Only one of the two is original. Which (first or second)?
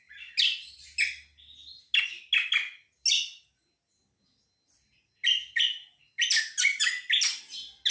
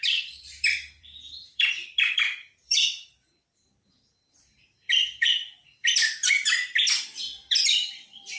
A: first